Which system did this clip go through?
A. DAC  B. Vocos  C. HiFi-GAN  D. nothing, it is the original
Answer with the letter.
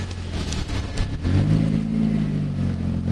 D